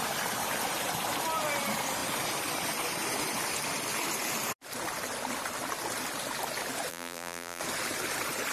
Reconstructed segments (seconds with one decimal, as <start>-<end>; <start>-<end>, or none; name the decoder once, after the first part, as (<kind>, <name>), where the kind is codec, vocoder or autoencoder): 6.9-7.6 (vocoder, BigVGAN v2)